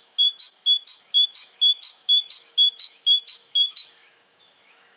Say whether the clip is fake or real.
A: fake